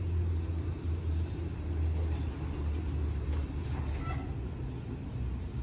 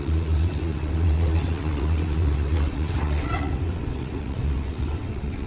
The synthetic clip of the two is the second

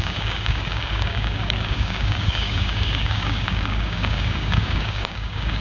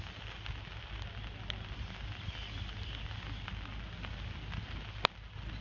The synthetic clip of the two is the first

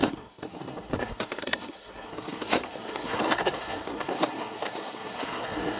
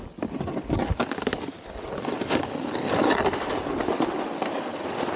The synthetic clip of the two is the first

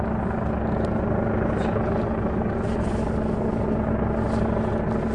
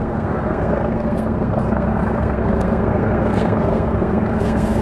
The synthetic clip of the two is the second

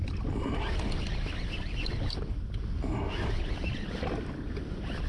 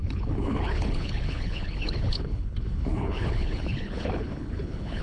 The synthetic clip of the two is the second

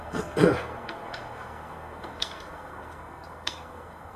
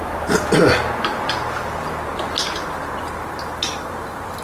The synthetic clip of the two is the first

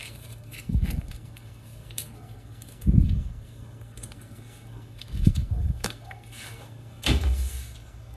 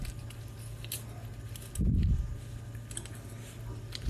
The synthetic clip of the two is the first